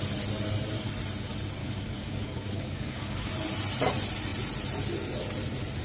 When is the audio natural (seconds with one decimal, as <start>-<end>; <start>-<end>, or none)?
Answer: 0.0-1.6; 3.3-5.8